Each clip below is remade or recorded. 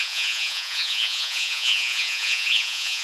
remade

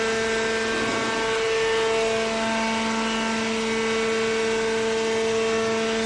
recorded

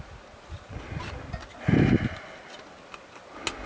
recorded